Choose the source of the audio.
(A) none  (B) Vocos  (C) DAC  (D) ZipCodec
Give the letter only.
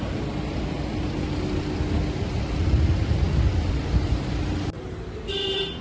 A